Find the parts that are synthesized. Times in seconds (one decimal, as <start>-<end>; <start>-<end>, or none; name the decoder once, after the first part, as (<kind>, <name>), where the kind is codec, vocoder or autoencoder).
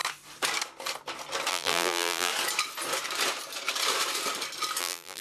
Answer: 1.5-2.3 (vocoder, BigVGAN v2); 4.8-5.2